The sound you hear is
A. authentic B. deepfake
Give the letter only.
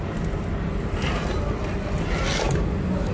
A